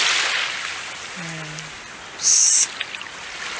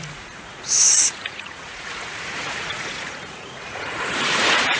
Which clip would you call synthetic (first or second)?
second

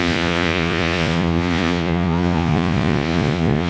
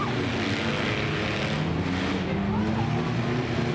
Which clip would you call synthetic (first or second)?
first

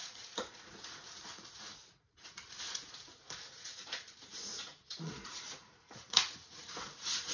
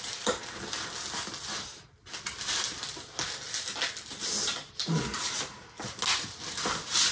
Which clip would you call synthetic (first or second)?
first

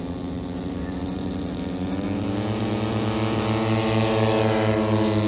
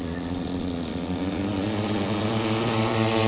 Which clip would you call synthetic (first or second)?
second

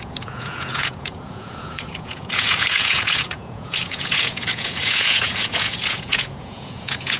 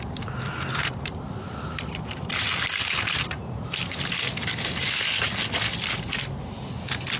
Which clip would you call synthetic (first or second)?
first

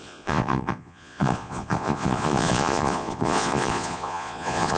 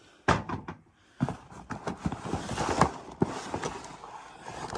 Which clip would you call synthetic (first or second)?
first